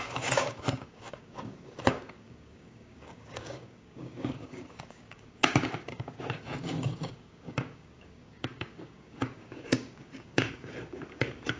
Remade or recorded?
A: remade